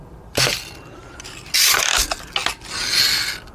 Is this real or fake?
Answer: real